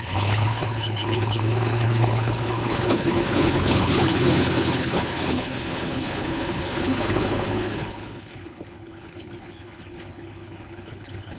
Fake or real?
fake